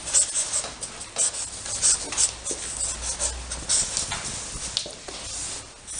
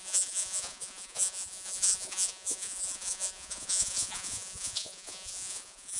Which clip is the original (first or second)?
first